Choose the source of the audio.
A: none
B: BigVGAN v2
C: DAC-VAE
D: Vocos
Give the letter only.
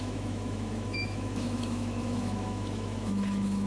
C